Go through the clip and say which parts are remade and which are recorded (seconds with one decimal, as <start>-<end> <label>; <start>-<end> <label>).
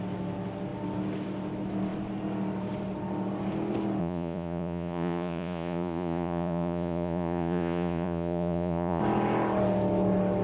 0.0-4.0 recorded; 4.0-9.0 remade; 9.0-10.4 recorded